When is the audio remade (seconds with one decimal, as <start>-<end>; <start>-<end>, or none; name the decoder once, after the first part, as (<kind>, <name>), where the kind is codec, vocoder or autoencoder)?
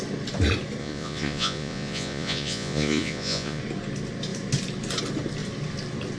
0.8-3.6 (vocoder, Vocos)